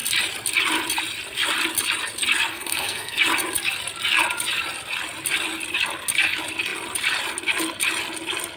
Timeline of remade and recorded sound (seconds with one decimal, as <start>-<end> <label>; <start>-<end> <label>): 0.0-2.5 recorded; 2.5-3.2 remade; 3.2-8.6 recorded